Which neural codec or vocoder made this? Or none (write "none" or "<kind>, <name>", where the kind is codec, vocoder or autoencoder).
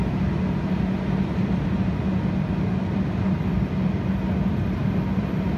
none